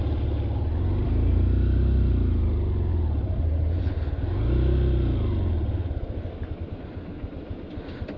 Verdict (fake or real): real